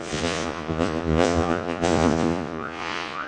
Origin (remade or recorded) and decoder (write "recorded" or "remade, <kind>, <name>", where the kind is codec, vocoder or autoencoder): remade, vocoder, Vocos